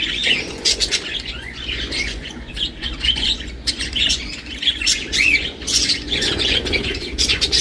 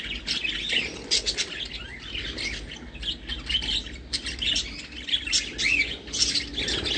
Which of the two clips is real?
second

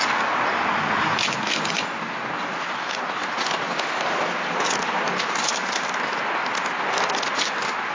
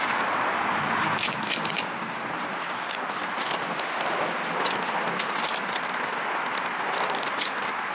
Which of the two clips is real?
first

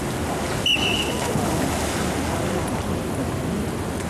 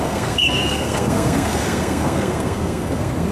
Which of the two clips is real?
first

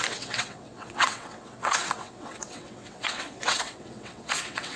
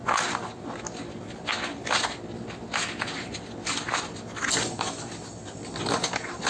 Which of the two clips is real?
second